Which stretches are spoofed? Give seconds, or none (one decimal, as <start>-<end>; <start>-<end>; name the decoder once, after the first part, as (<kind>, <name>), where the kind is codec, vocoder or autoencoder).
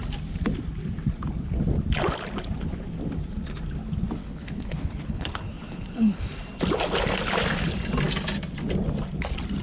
4.2-6.3 (codec, HILCodec)